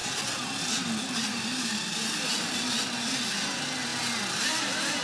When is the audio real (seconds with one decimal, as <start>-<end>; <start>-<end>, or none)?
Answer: 0.0-5.0